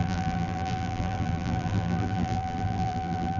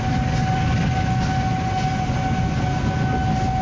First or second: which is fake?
first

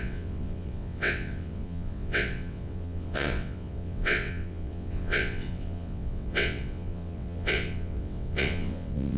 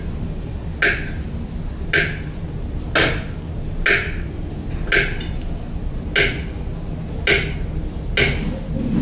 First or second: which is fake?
first